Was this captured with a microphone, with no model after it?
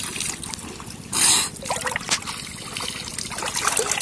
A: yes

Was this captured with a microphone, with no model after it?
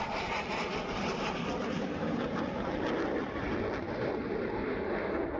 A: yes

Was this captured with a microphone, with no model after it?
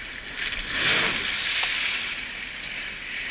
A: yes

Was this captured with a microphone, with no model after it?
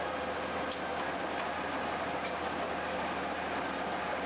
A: yes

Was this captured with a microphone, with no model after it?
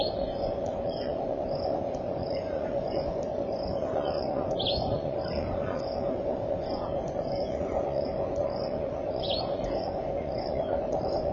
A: no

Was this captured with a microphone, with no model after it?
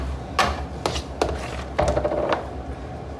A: yes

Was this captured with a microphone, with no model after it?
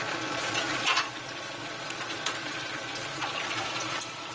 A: no